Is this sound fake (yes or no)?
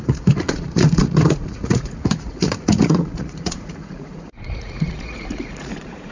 yes